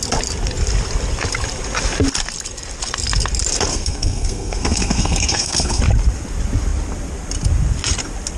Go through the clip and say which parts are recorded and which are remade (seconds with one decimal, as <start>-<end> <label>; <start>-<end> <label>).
0.0-3.7 recorded; 3.7-5.8 remade; 5.8-8.4 recorded